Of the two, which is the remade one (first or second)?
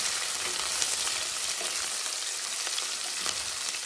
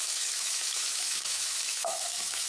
second